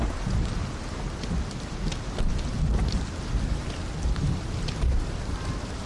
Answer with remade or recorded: recorded